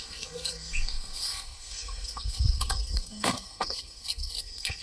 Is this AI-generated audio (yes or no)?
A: yes